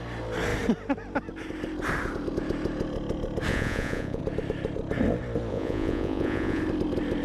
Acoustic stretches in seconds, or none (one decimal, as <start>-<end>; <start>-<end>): 0.0-3.5; 4.2-5.5; 6.6-7.2